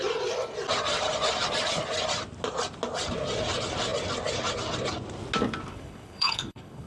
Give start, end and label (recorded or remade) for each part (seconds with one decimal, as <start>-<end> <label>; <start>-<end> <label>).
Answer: 0.0-5.7 recorded; 5.7-6.9 remade